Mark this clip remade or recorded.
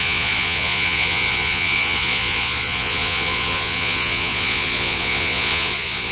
remade